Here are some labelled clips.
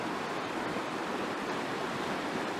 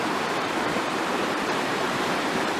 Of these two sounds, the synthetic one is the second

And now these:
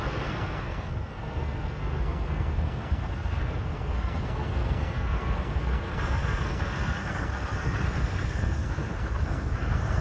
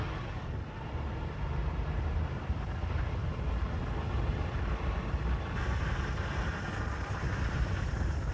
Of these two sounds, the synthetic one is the first